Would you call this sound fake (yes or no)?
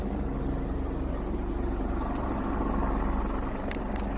no